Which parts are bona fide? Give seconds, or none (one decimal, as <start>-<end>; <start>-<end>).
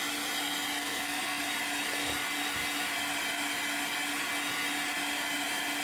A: 0.0-0.8; 1.4-5.8